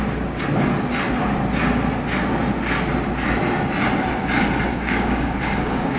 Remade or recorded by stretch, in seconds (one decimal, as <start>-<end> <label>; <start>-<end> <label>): 0.0-4.7 recorded; 4.7-6.0 remade